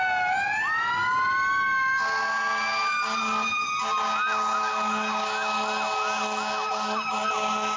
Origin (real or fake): real